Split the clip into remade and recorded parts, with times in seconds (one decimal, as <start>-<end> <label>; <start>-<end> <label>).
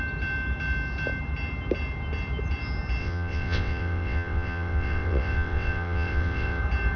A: 0.0-3.0 recorded; 3.0-6.6 remade; 6.6-7.0 recorded